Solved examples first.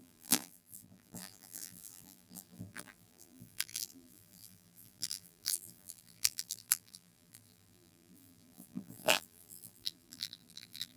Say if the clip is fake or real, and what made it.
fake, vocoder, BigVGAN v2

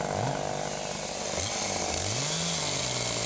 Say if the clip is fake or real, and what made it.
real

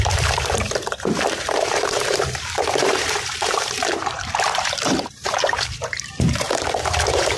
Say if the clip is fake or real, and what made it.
fake, vocoder, BigVGAN v2